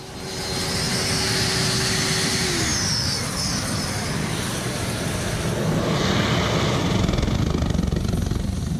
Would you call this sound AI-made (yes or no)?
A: no